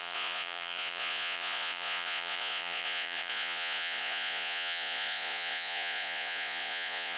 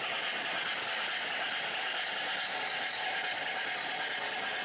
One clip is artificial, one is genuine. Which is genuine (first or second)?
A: second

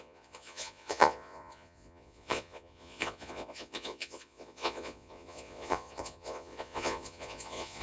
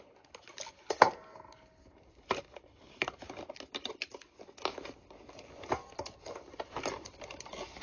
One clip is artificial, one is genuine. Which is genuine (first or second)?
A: second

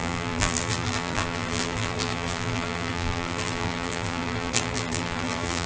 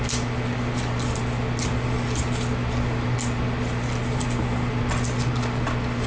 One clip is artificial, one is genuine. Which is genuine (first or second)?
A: second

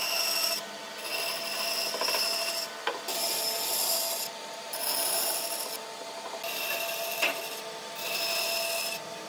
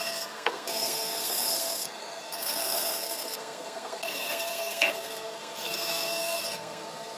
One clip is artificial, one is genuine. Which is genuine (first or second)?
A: first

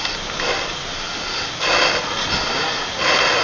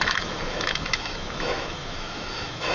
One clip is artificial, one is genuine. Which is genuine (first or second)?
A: first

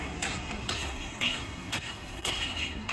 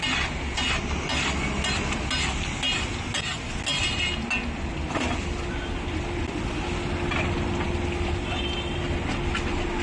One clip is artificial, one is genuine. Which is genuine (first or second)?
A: second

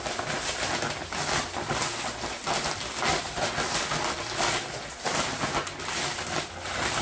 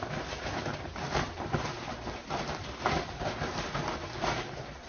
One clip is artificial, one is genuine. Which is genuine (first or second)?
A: first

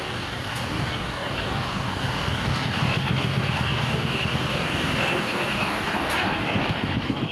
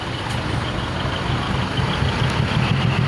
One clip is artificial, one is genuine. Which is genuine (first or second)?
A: second